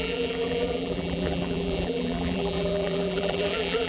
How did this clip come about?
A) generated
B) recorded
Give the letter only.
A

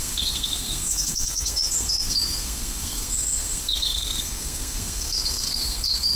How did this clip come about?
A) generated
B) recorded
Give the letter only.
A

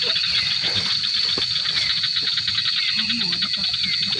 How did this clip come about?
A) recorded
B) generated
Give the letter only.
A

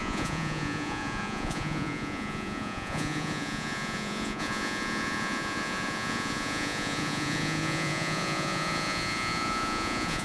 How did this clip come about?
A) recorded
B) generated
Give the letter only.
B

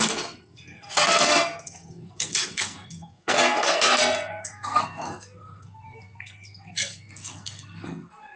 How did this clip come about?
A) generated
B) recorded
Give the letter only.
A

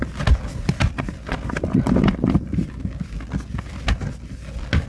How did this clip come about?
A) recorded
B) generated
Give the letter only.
A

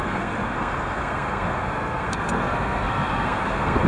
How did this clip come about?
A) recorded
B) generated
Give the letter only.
B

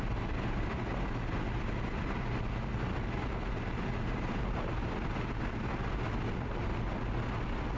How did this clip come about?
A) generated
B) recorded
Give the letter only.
B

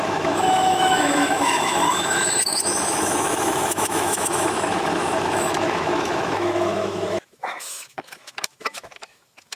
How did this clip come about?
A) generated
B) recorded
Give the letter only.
A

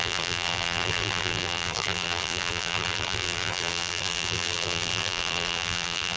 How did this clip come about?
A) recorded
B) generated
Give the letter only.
B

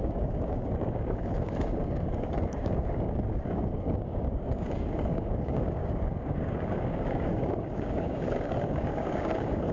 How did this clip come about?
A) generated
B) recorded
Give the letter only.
A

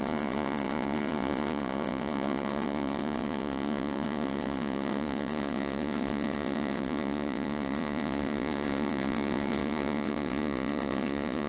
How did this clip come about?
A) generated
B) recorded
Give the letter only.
A